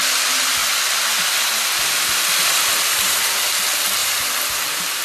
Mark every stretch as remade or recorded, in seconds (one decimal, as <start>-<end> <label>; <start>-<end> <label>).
0.0-0.6 recorded; 0.6-3.6 remade; 3.6-4.0 recorded; 4.0-5.0 remade